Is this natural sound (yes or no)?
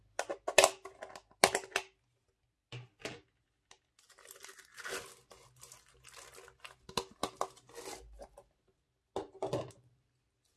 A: yes